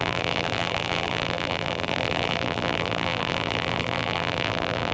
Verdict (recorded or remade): remade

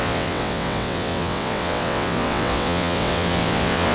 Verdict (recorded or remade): remade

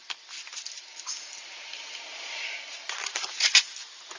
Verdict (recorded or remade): recorded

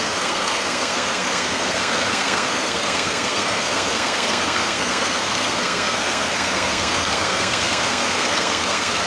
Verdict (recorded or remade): remade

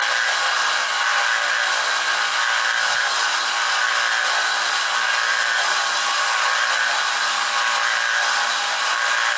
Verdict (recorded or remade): recorded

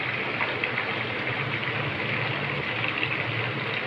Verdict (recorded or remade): recorded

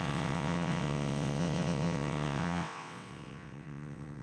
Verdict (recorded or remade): remade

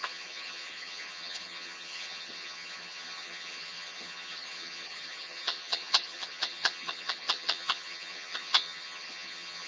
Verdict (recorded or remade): remade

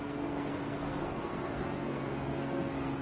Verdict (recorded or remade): remade